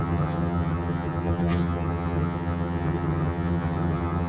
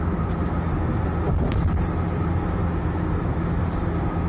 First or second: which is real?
second